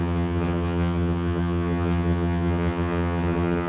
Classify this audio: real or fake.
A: fake